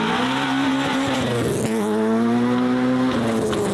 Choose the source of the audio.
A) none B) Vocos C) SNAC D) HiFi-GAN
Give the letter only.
A